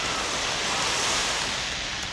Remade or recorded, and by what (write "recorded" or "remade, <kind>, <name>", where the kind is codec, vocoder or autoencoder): recorded